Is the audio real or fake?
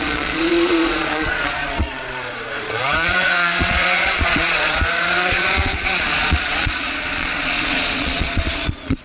fake